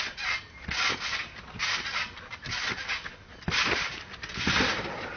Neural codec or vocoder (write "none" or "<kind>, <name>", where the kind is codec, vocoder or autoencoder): none